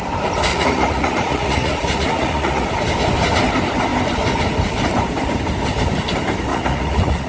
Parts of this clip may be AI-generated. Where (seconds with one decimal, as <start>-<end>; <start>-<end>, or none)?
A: 0.5-2.7; 6.5-7.3